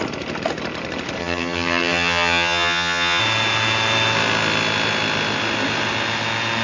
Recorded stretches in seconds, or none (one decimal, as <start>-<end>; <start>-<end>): 0.0-1.2; 3.2-6.6